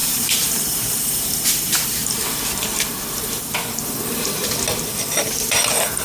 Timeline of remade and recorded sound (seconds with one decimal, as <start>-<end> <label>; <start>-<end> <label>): 0.0-4.4 remade; 4.4-5.2 recorded; 5.2-6.0 remade